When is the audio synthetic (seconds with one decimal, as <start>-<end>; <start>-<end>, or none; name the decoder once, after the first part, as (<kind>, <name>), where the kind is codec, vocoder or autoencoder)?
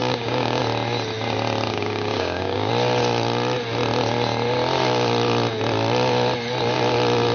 0.0-0.6 (codec, DAC); 1.7-2.7